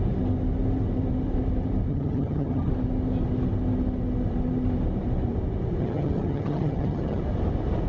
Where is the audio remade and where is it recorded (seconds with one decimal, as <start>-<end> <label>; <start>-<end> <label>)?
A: 0.0-1.9 recorded; 1.9-2.7 remade; 2.7-5.8 recorded; 5.8-7.2 remade; 7.2-7.9 recorded